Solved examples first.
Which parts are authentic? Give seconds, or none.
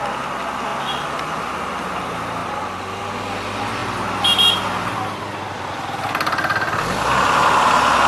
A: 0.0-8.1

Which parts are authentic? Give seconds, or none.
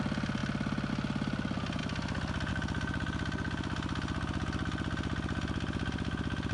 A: 0.4-0.9; 1.8-2.5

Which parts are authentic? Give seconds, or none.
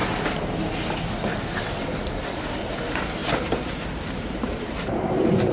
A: 0.0-2.6